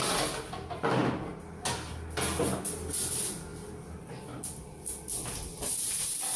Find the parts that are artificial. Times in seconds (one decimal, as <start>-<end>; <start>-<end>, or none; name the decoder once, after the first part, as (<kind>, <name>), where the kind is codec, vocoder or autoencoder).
none